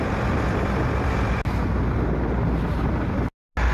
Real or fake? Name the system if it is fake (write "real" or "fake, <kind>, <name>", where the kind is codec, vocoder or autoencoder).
real